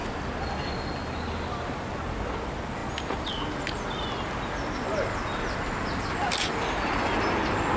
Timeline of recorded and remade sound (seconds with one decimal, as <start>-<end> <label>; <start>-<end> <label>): 0.0-7.8 recorded